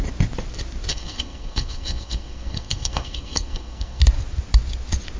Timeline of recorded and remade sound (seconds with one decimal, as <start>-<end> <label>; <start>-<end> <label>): 0.0-0.9 recorded; 0.9-4.0 remade; 4.0-5.2 recorded